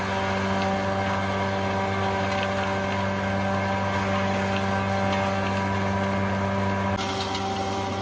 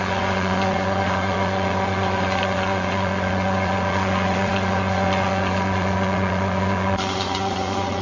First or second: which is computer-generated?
second